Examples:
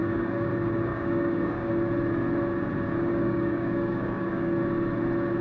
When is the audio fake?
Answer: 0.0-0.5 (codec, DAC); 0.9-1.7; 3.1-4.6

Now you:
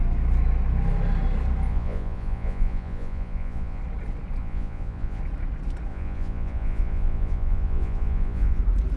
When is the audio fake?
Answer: 1.7-3.8 (vocoder, Vocos); 4.4-5.2; 5.9-8.6

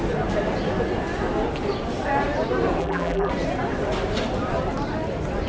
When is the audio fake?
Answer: 2.8-3.3 (vocoder, BigVGAN v2)

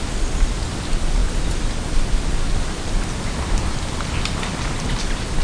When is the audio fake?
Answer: none

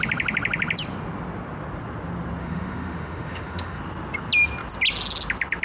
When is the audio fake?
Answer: 2.4-3.8 (autoencoder, DAC-VAE)

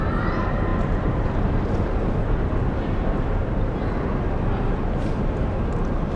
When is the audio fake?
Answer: 0.7-4.4 (vocoder, BigVGAN v2)

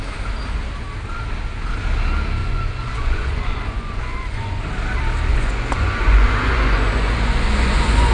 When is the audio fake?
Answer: 2.4-4.6 (vocoder, Vocos); 5.3-8.1

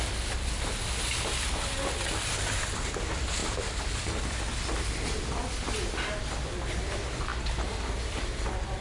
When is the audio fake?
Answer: none